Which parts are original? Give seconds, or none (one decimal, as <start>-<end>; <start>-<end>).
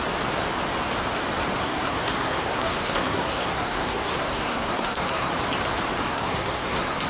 0.0-1.6; 5.3-6.1